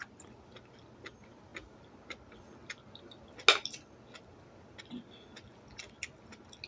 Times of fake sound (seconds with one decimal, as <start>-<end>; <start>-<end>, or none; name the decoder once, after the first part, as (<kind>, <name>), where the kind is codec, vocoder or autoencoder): none